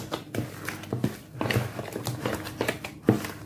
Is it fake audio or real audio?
real